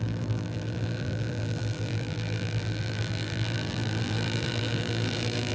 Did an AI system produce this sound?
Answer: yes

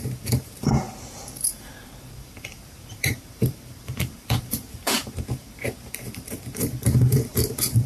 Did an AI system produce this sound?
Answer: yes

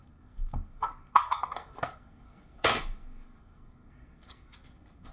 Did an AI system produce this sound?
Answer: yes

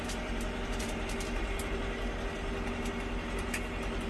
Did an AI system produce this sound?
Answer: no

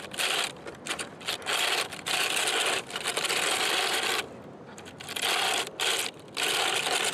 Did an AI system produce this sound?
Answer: no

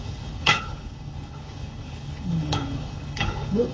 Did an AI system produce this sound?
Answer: yes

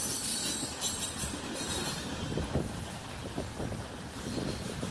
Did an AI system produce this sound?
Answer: no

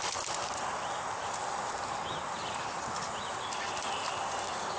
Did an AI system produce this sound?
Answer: no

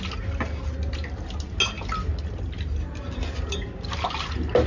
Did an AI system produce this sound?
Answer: no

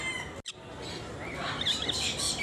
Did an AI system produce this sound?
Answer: no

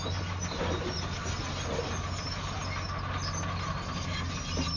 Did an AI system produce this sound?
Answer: no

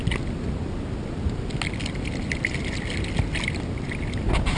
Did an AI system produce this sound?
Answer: no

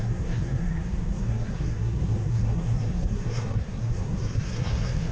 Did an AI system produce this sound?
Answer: yes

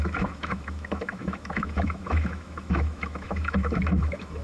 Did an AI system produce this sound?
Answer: yes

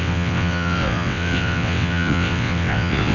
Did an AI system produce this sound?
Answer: yes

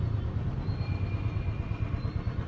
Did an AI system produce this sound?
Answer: no